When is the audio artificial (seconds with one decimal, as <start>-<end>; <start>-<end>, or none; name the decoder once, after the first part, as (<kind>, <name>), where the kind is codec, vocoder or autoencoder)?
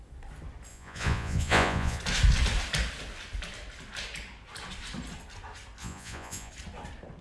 0.7-2.0 (vocoder, Vocos); 5.8-6.5